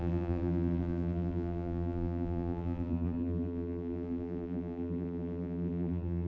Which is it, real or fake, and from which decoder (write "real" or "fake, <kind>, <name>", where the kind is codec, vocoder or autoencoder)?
fake, vocoder, BigVGAN v2